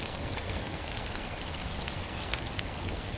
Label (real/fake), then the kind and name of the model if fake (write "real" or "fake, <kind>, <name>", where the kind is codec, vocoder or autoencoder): fake, codec, SNAC